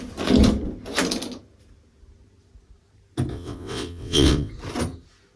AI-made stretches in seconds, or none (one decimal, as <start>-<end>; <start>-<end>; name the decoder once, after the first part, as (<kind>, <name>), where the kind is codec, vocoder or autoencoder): 3.3-4.5 (vocoder, WaveNeXt)